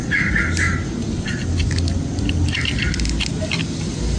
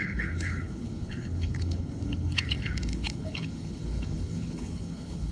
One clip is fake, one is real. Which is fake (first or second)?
second